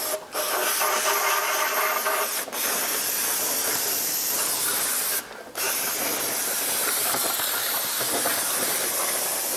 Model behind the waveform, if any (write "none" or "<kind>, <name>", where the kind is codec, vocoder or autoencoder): none